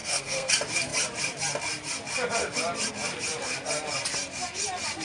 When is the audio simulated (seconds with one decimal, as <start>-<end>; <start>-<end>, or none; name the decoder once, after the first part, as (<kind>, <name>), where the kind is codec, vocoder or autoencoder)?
0.0-0.5 (codec, SNAC)